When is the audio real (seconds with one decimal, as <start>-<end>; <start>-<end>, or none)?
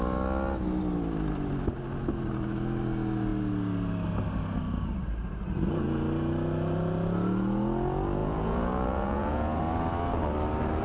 0.0-8.2; 9.6-10.8